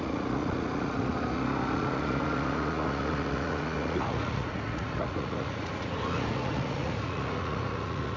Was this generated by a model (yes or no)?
yes